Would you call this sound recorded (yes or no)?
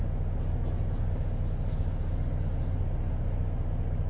yes